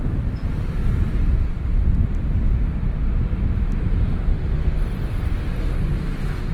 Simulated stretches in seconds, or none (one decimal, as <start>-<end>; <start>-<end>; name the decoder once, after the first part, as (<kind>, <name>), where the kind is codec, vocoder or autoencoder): 0.8-1.5 (vocoder, BigVGAN v2); 4.6-5.7